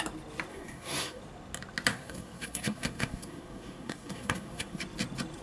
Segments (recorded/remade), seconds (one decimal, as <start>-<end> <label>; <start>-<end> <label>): 0.0-0.5 recorded; 0.5-1.2 remade; 1.2-1.9 recorded; 1.9-4.8 remade; 4.8-5.4 recorded